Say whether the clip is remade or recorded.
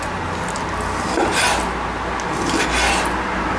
recorded